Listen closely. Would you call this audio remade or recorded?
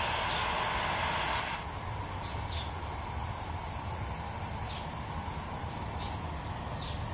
recorded